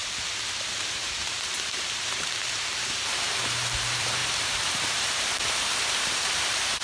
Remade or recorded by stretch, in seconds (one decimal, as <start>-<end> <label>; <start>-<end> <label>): 0.0-0.5 recorded; 0.5-6.8 remade